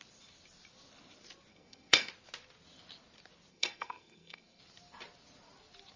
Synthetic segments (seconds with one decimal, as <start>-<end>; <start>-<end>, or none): 1.5-2.1; 3.5-4.6